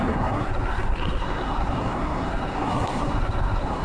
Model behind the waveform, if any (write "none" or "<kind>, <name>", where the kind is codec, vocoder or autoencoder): codec, SNAC